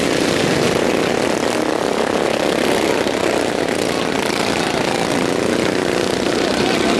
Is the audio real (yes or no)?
yes